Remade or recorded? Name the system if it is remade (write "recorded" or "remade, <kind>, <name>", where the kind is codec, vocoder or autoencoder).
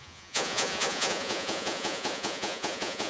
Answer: remade, vocoder, Vocos